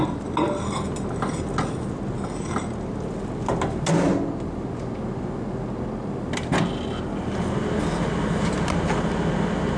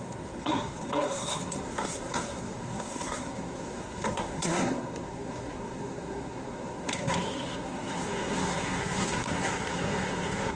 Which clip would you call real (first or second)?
first